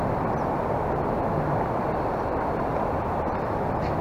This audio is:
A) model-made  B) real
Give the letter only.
A